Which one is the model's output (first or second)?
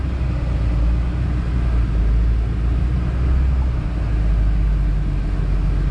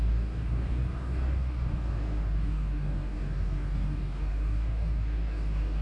second